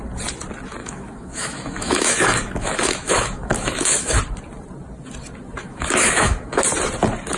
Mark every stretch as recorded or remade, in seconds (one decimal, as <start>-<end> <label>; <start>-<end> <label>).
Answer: 0.0-0.8 recorded; 0.8-4.2 remade; 4.2-5.6 recorded; 5.6-6.6 remade; 6.6-7.4 recorded

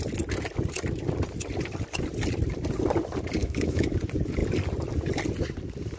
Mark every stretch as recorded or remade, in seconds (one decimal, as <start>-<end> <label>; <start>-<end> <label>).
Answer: 0.0-3.4 recorded; 3.4-3.9 remade; 3.9-6.0 recorded

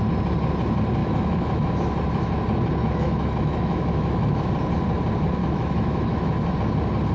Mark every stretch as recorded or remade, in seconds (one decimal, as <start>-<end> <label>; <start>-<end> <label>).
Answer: 0.0-1.0 recorded; 1.0-1.7 remade; 1.7-2.8 recorded; 2.8-4.5 remade; 4.5-5.4 recorded; 5.4-6.5 remade; 6.5-7.1 recorded

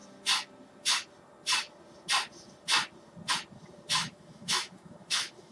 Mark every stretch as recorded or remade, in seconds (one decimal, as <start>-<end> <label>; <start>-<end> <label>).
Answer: 0.0-4.0 recorded; 4.0-5.5 remade

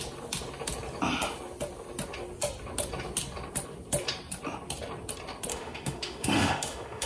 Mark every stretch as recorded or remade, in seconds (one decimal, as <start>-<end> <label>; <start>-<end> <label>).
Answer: 0.0-5.5 recorded; 5.5-7.1 remade

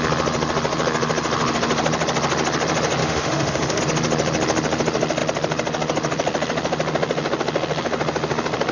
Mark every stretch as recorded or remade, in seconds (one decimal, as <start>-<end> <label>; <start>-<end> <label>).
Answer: 0.0-3.0 recorded; 3.0-3.8 remade; 3.8-8.7 recorded

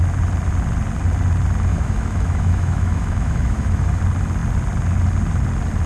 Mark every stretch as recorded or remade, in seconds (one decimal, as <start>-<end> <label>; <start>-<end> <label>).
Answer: 0.0-1.7 recorded; 1.7-4.0 remade; 4.0-5.9 recorded

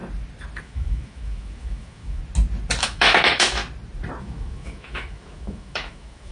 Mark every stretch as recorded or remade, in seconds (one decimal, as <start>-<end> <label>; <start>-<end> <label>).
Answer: 0.0-0.6 recorded; 0.6-2.2 remade; 2.2-2.8 recorded; 2.8-3.6 remade; 3.6-4.2 recorded; 4.2-6.3 remade